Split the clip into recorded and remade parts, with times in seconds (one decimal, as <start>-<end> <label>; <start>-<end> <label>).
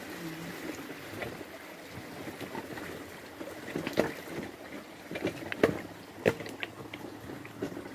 0.0-7.9 recorded